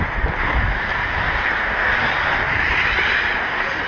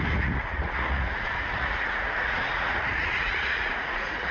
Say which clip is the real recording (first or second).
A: first